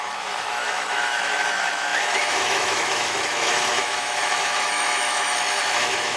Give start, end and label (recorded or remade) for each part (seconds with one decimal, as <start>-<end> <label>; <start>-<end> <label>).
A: 0.0-6.2 remade